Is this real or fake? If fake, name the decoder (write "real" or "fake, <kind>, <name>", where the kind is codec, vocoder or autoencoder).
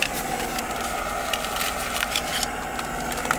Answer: real